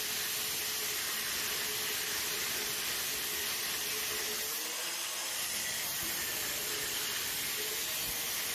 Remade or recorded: remade